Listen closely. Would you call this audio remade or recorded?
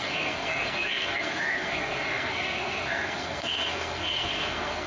remade